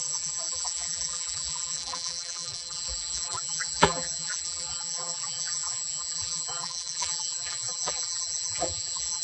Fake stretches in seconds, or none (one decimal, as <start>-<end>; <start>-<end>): 0.0-9.2